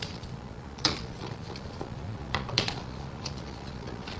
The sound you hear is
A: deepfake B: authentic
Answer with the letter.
A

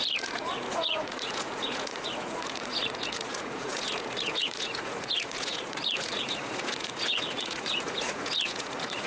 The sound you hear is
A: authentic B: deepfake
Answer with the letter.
B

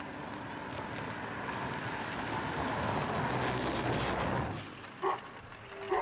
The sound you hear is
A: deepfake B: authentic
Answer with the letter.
B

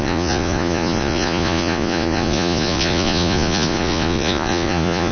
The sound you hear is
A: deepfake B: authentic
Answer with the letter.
A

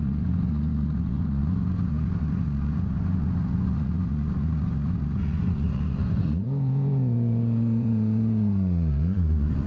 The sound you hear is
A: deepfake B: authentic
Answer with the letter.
A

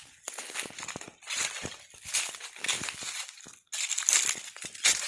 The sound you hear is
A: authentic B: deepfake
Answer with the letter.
A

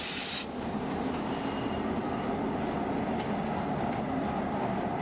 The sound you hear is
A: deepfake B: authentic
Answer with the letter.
B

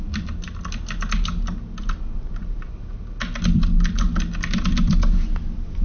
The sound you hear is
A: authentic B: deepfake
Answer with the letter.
A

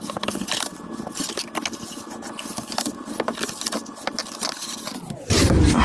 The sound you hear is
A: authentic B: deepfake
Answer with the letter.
A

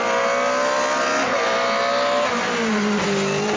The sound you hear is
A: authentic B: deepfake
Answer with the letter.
A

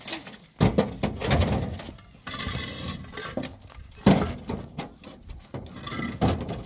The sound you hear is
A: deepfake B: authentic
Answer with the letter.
B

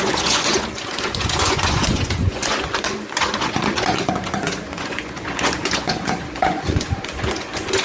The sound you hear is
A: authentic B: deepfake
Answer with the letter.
B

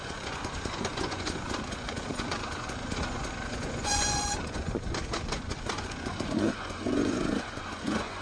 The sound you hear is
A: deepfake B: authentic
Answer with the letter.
A